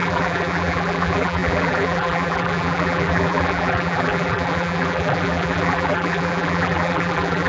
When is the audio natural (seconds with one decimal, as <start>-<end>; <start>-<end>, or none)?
none